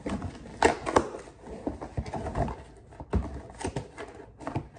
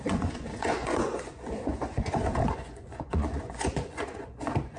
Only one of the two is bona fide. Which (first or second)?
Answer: first